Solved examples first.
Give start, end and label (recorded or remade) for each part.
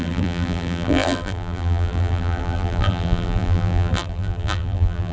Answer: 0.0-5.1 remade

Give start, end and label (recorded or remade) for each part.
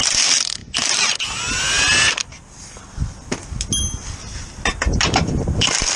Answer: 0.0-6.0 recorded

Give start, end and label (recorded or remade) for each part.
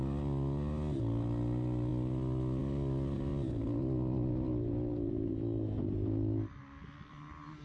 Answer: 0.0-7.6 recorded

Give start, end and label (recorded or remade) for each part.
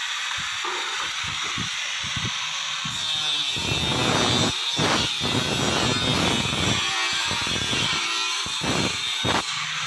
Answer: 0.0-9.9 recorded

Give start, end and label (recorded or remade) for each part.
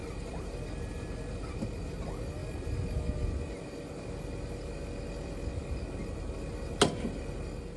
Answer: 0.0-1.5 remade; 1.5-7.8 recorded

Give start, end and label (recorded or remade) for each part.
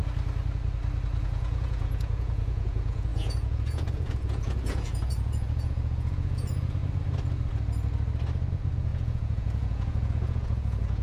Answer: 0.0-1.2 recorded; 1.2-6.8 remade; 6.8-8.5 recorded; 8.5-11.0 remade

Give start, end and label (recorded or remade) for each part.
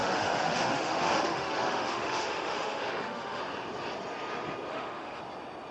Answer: 0.0-3.4 remade; 3.4-4.7 recorded; 4.7-5.2 remade; 5.2-5.7 recorded